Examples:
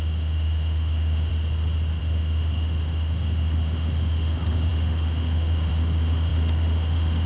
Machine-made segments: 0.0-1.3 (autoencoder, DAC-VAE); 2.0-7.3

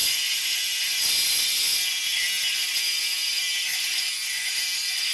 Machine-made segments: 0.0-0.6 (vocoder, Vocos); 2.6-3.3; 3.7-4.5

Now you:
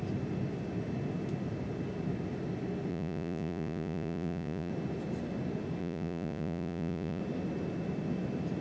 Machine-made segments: 2.9-4.7 (vocoder, Vocos); 5.8-7.2